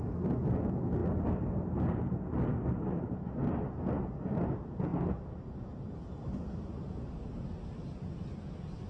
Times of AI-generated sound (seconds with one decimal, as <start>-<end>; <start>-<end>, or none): none